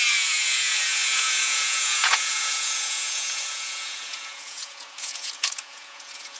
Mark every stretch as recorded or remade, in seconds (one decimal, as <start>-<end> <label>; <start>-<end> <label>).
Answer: 0.0-6.4 remade

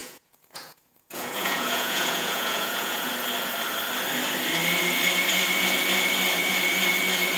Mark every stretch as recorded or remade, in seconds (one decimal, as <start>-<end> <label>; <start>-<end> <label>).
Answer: 0.0-3.1 remade; 3.1-7.4 recorded

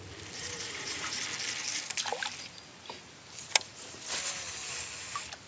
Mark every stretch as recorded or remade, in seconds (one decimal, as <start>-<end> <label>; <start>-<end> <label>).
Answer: 0.0-0.4 recorded; 0.4-1.2 remade; 1.2-5.5 recorded